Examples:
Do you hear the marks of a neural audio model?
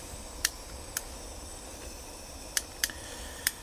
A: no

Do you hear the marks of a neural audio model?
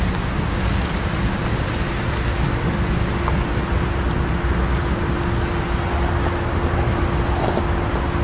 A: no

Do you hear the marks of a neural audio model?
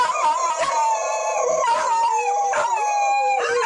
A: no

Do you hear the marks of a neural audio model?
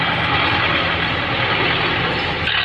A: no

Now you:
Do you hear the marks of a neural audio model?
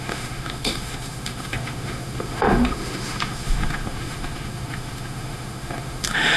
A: yes